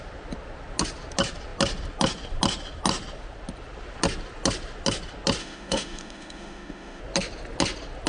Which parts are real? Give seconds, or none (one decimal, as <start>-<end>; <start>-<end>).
0.0-5.4; 7.0-8.1